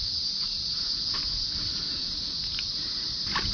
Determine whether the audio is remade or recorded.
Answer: recorded